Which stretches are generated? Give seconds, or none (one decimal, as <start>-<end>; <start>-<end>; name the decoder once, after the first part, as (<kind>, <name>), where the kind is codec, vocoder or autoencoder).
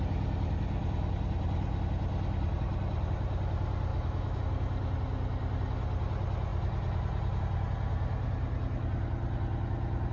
3.9-4.4 (autoencoder, DAC-VAE)